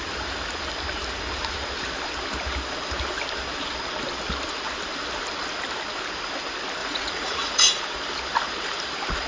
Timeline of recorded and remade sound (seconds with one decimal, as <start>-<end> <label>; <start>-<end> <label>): 0.0-6.8 recorded; 6.8-7.7 remade; 7.7-9.3 recorded